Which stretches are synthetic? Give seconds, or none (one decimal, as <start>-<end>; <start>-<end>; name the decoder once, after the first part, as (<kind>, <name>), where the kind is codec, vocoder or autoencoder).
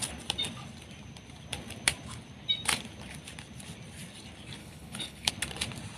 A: 4.6-5.3 (codec, HILCodec)